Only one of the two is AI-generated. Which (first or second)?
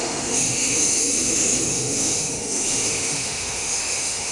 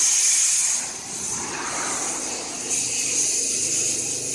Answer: first